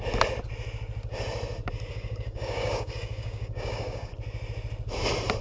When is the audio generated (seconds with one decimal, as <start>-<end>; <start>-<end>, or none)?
1.9-4.1